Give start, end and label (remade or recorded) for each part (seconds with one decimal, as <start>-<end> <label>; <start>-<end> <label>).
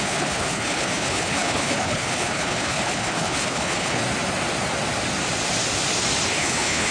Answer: 0.0-4.0 remade; 4.0-6.3 recorded; 6.3-6.9 remade